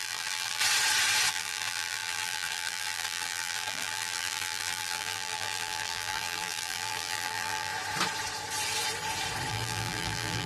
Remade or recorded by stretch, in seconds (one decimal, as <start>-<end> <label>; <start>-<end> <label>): 0.0-0.6 remade; 0.6-1.3 recorded; 1.3-7.7 remade; 7.7-9.5 recorded; 9.5-10.5 remade